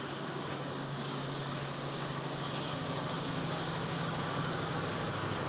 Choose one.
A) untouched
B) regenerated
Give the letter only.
B